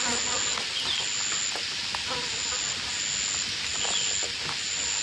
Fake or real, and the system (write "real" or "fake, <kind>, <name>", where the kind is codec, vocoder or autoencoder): real